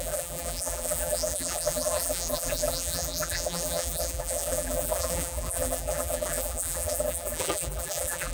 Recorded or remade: remade